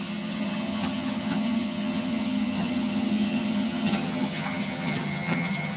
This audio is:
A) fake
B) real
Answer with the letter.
A